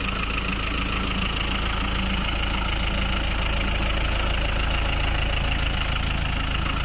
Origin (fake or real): real